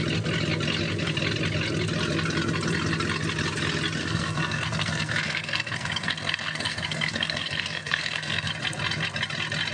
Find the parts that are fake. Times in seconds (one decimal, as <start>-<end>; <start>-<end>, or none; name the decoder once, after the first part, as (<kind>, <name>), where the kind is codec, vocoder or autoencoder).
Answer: 4.0-8.5 (codec, SNAC)